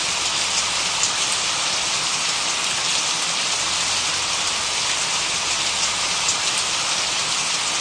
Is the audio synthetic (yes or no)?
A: no